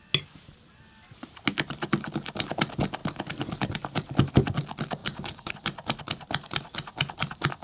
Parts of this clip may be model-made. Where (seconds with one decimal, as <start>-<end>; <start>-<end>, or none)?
5.0-5.5